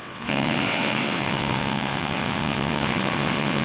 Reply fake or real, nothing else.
fake